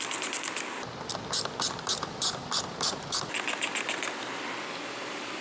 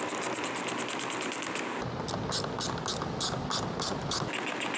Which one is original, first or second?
second